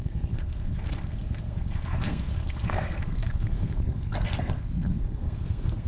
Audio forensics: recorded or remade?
remade